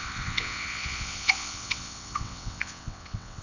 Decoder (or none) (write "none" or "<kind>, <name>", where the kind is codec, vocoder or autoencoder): vocoder, WaveNeXt